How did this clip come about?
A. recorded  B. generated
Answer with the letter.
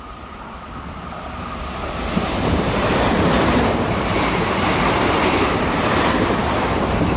B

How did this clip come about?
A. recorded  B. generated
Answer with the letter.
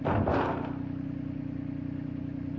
A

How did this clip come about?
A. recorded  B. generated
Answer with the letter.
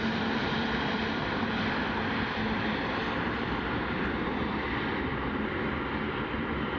B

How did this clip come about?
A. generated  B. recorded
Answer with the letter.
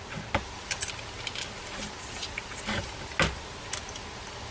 B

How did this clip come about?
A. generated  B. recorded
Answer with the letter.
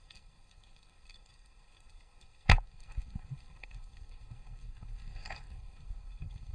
A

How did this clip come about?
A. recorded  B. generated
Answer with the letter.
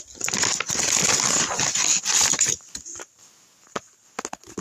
A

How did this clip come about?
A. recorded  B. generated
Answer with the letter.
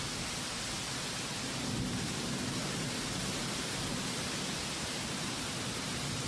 A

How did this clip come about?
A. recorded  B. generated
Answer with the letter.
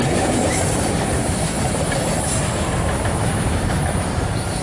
B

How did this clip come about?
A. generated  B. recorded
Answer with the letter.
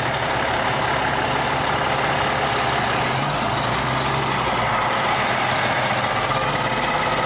B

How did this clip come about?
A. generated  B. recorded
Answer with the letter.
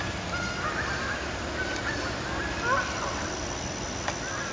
B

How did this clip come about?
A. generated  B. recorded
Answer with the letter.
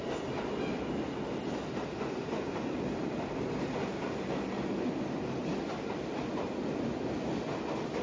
B